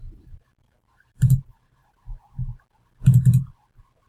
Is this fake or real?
fake